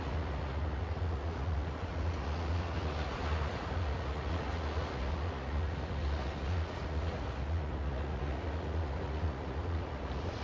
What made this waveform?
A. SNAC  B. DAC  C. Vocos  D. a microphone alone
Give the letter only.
C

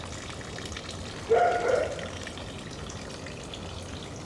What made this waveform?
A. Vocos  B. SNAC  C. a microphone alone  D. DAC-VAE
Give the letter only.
C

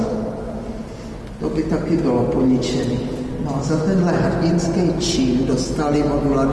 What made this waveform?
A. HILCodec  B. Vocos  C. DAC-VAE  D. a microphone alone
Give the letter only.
D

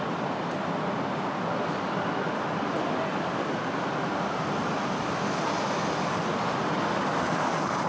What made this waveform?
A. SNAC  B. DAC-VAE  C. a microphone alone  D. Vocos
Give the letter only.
C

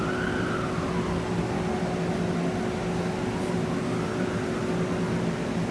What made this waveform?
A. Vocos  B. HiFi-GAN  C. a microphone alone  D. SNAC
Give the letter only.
C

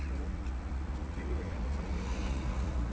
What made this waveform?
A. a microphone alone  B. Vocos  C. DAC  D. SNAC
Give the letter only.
B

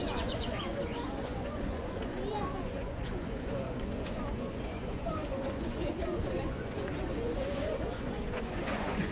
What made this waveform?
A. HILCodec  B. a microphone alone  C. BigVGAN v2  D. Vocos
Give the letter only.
D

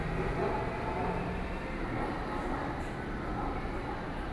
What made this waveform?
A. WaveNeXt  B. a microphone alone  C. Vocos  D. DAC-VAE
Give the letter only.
B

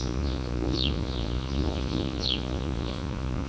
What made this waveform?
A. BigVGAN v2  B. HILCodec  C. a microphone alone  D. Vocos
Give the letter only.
D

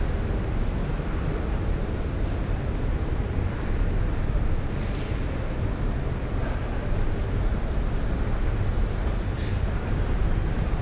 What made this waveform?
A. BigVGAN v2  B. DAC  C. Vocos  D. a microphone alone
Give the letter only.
D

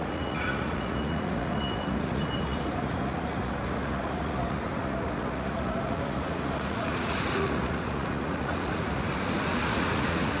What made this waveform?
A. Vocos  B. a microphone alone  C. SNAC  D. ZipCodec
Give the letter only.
A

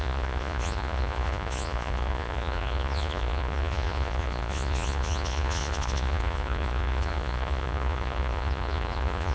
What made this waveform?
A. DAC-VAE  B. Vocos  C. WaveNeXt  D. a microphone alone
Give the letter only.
B